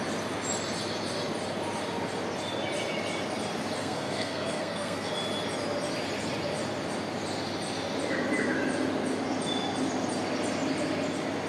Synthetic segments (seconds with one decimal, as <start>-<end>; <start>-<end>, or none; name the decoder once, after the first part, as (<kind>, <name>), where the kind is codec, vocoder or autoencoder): 3.8-5.1 (codec, SNAC)